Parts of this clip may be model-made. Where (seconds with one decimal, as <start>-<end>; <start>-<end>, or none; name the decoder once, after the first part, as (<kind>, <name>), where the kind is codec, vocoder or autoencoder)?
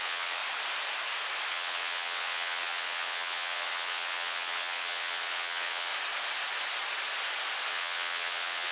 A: 0.0-0.4 (vocoder, WaveNeXt); 1.5-5.9; 7.7-8.7